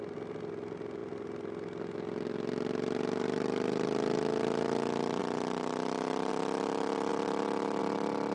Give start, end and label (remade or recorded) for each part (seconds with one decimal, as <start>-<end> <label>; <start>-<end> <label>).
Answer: 0.0-8.3 recorded